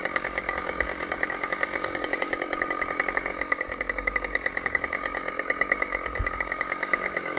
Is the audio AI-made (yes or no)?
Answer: yes